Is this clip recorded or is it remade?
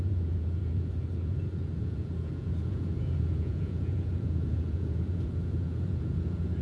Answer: remade